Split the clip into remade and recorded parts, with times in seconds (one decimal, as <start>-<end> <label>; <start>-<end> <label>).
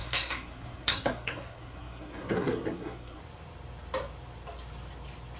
0.0-3.2 remade; 3.2-5.4 recorded